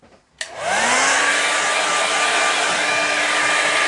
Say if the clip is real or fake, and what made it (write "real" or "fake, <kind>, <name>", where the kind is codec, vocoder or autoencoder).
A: real